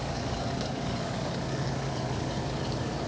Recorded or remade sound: remade